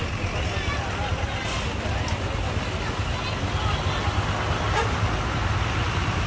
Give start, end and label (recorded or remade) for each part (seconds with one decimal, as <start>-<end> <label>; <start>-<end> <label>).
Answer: 0.0-6.3 recorded

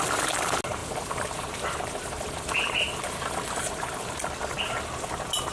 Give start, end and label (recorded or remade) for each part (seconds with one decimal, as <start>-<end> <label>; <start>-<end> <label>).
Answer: 0.0-0.8 recorded; 0.8-4.1 remade; 4.1-5.5 recorded

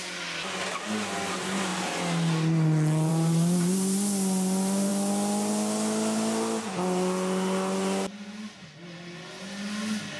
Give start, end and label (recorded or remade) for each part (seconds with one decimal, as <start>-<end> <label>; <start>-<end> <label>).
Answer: 0.0-10.2 recorded

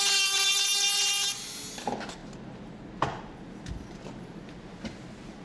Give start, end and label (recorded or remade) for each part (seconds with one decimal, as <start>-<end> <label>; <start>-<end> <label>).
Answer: 0.0-5.4 recorded

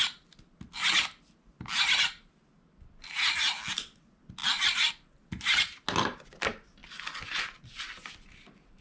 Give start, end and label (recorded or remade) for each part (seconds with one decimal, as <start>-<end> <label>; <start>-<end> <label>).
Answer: 0.0-4.4 recorded; 4.4-4.9 remade; 4.9-8.8 recorded

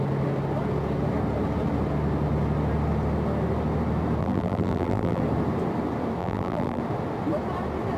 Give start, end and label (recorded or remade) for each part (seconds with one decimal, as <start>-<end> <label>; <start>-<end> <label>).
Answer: 0.0-4.2 recorded; 4.2-5.2 remade; 5.2-6.2 recorded; 6.2-6.8 remade; 6.8-8.0 recorded

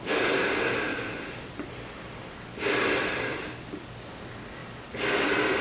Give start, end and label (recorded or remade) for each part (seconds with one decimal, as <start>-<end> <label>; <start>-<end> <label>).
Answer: 0.0-5.6 remade